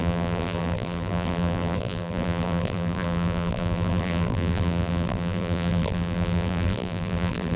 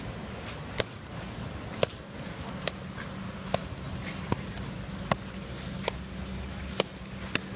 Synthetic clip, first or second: first